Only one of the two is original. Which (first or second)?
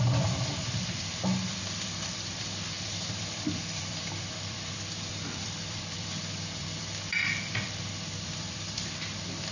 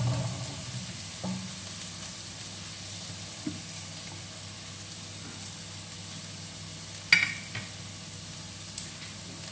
second